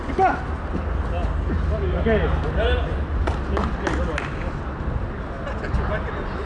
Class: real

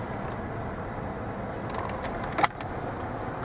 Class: real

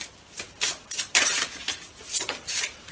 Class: fake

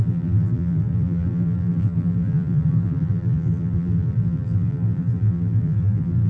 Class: fake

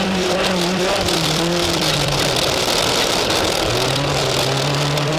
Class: fake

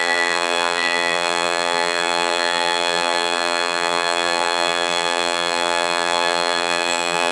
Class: fake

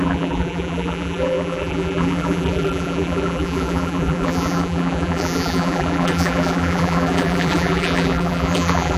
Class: fake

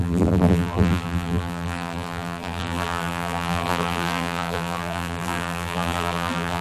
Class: fake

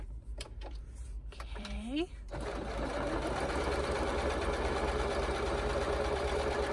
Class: fake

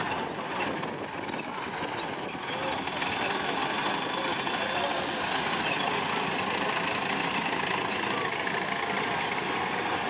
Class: real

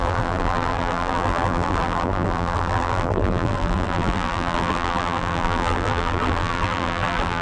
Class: fake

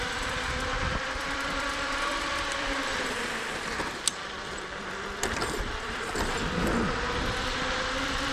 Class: fake